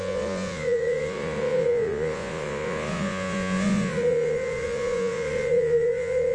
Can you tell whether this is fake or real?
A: fake